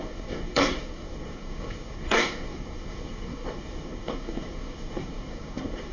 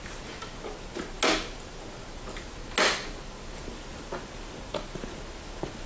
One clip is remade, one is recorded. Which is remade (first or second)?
first